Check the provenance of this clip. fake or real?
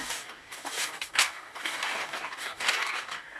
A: fake